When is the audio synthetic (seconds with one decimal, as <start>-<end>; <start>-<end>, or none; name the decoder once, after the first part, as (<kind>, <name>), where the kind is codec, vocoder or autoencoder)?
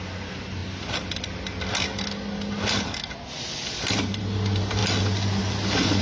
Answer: none